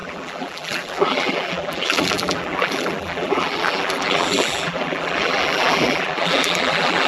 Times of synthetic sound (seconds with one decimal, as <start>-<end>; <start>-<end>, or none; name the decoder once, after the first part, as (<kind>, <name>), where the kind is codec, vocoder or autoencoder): 0.0-7.1 (vocoder, BigVGAN v2)